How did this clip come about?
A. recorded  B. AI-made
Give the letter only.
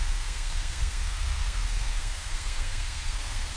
B